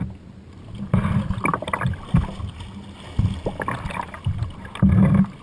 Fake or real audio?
real